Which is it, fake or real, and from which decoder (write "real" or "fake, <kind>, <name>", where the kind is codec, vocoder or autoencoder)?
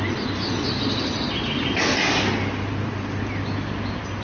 real